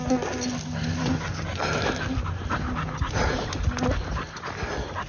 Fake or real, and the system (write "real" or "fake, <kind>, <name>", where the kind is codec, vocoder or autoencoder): real